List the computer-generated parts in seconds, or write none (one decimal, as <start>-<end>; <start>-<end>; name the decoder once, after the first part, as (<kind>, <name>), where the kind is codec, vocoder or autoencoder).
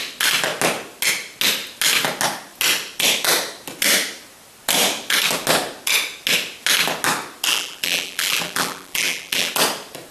7.5-9.5 (vocoder, BigVGAN v2)